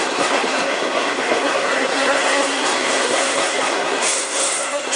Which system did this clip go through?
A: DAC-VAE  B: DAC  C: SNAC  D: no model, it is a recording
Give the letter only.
C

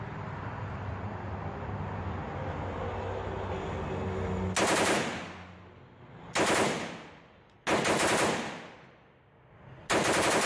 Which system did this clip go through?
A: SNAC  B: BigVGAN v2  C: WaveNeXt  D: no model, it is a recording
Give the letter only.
D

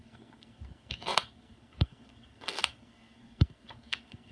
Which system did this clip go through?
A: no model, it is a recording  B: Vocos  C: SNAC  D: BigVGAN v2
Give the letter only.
C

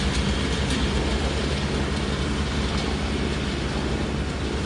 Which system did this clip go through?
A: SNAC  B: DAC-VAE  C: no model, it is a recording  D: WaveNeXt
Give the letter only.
C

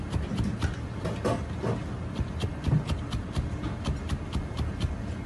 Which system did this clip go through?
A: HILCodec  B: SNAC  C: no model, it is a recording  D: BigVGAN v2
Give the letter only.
C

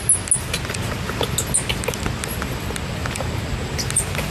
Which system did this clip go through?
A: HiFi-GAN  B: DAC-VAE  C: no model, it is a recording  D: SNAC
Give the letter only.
C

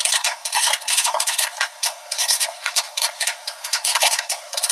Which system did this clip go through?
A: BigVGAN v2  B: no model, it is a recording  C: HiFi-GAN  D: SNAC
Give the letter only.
D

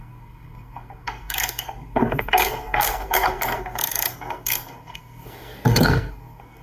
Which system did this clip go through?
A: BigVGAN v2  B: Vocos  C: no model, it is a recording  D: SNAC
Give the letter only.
D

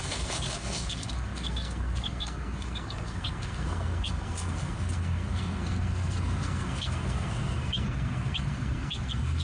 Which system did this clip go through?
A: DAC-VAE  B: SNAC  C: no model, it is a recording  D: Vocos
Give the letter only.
B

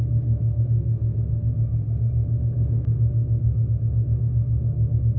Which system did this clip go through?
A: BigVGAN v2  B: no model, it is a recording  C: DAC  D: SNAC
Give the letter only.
D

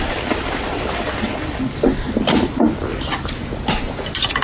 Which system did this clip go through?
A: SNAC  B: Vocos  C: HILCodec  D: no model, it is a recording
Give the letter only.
D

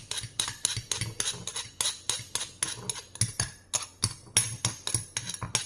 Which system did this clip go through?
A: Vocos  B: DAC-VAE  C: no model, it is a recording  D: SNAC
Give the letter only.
C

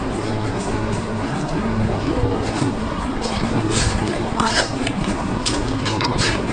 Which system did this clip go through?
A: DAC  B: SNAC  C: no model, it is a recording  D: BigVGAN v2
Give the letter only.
B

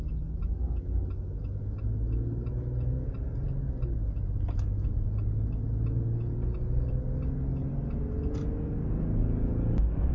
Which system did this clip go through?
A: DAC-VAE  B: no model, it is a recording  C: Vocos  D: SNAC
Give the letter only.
B